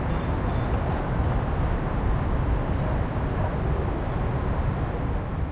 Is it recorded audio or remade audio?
recorded